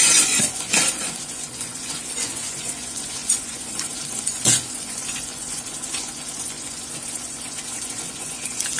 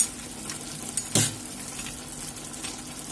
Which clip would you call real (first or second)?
second